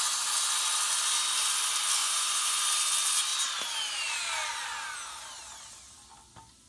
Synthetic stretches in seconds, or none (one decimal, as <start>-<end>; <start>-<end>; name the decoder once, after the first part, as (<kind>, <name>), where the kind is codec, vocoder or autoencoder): 2.0-2.6 (vocoder, Vocos)